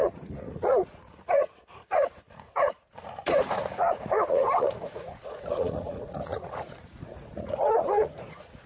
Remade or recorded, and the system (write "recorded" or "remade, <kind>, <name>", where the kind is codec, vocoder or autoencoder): remade, vocoder, Vocos